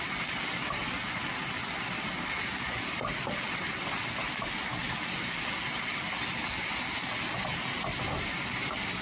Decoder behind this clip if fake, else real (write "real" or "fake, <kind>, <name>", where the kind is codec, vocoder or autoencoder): real